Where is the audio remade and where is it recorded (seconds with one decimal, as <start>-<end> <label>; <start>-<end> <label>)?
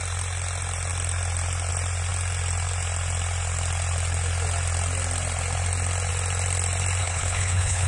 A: 0.0-7.0 recorded; 7.0-7.9 remade